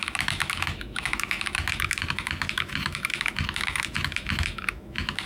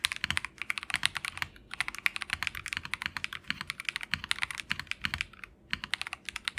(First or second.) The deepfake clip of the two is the first